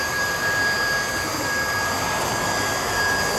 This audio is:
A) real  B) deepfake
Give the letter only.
A